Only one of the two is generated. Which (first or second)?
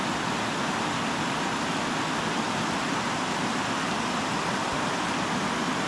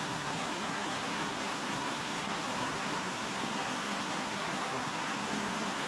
second